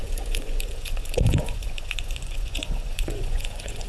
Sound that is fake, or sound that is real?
fake